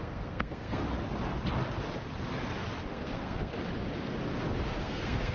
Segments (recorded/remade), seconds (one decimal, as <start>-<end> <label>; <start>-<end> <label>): 0.0-0.8 remade; 0.8-2.9 recorded; 2.9-3.5 remade; 3.5-4.8 recorded; 4.8-5.3 remade